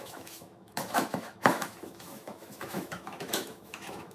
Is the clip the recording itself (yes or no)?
no